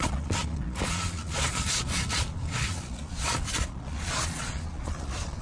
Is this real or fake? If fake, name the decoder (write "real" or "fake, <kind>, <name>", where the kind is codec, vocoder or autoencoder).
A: fake, vocoder, Vocos